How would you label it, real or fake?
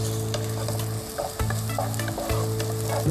real